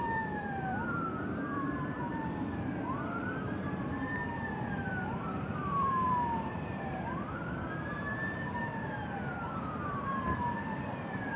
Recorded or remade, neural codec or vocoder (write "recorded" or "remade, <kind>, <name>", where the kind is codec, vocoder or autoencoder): remade, vocoder, BigVGAN v2